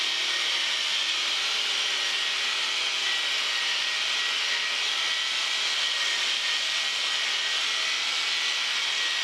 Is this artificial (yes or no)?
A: no